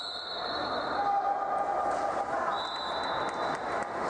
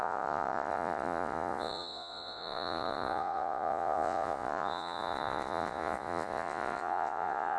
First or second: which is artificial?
second